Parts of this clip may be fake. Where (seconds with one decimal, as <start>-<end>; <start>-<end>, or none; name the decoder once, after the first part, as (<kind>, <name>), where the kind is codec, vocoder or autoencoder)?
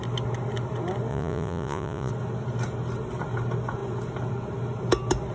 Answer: 1.1-2.1 (vocoder, Vocos)